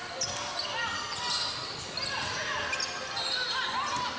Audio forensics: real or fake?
real